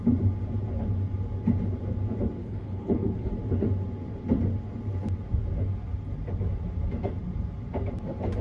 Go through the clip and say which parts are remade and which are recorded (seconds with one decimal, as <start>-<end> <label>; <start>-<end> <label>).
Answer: 0.0-2.4 recorded; 2.4-3.3 remade; 3.3-8.4 recorded